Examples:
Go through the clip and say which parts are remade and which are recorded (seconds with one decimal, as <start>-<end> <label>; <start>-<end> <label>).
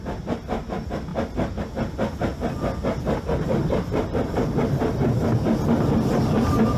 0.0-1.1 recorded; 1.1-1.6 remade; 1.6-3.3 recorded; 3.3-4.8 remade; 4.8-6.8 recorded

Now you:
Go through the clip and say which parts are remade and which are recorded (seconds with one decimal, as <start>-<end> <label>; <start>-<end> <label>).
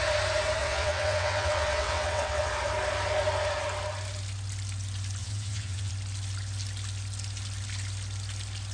0.0-0.6 recorded; 0.6-2.5 remade; 2.5-5.2 recorded; 5.2-5.9 remade; 5.9-8.7 recorded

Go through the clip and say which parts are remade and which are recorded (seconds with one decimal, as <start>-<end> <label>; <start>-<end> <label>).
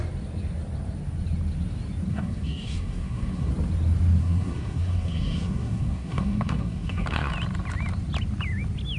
0.0-2.1 recorded; 2.1-3.5 remade; 3.5-4.2 recorded; 4.2-7.3 remade; 7.3-9.0 recorded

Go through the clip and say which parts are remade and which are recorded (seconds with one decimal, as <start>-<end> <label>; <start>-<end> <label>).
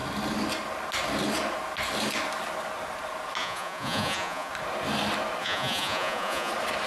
0.0-3.4 recorded; 3.4-4.5 remade; 4.5-5.4 recorded; 5.4-6.5 remade; 6.5-6.9 recorded